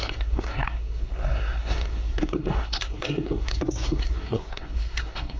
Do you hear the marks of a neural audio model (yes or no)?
yes